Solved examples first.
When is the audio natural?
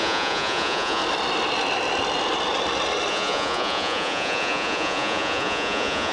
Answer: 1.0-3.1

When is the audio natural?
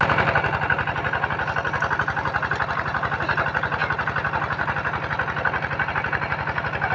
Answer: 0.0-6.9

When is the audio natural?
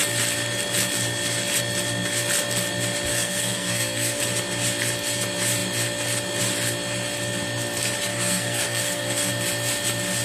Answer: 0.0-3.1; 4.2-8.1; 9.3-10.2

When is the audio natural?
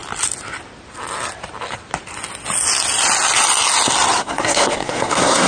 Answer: 0.0-4.2